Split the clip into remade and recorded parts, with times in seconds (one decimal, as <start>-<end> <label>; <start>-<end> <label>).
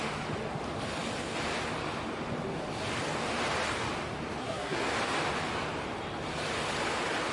0.0-4.4 recorded; 4.4-4.9 remade; 4.9-7.3 recorded